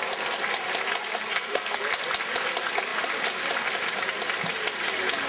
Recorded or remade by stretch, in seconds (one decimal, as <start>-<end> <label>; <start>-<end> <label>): 0.0-1.3 recorded; 1.3-1.8 remade; 1.8-5.3 recorded